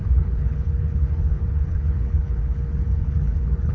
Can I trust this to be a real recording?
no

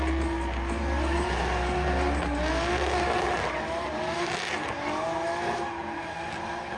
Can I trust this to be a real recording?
yes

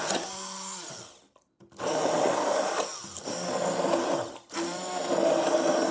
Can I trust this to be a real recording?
yes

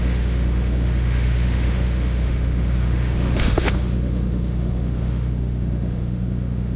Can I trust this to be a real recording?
no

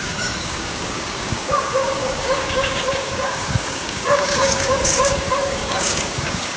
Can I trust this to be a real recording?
no